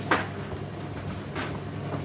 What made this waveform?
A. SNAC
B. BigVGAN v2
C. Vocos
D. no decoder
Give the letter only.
D